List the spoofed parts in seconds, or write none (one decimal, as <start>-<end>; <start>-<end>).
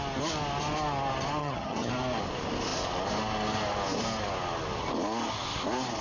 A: 1.4-1.9